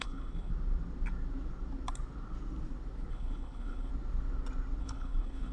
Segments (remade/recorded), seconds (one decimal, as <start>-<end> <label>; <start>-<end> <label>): 0.0-0.5 remade; 0.5-3.1 recorded; 3.1-3.9 remade; 3.9-4.8 recorded; 4.8-5.5 remade